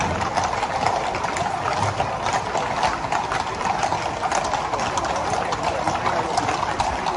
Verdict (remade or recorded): recorded